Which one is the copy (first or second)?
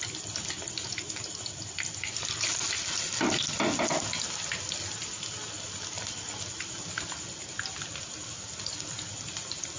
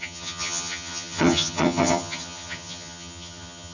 second